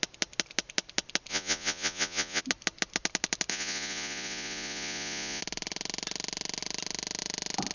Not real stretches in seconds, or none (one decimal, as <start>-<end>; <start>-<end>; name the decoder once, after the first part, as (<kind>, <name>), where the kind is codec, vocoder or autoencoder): 1.3-2.4 (vocoder, Vocos); 3.5-5.4